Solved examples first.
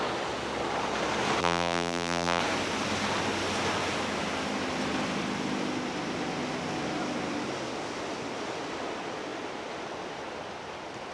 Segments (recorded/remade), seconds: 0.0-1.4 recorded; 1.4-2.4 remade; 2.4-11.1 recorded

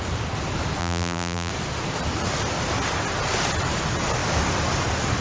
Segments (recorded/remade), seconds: 0.0-0.8 recorded; 0.8-1.5 remade; 1.5-5.2 recorded